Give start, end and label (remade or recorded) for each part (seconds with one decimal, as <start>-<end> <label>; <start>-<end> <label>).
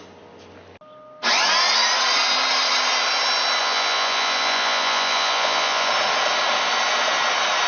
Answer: 0.0-3.6 recorded; 3.6-5.9 remade; 5.9-7.7 recorded